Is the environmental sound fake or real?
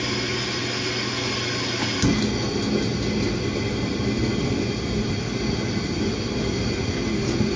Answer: real